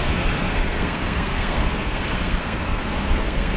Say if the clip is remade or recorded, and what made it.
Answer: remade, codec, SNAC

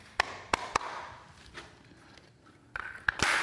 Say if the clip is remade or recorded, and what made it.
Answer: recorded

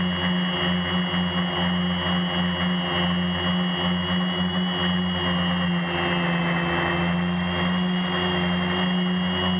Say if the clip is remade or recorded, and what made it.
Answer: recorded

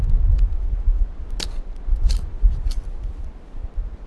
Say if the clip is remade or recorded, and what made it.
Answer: recorded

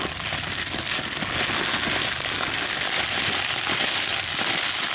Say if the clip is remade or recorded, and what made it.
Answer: recorded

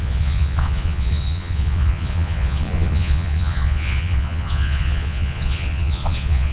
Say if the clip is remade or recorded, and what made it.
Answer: remade, vocoder, Vocos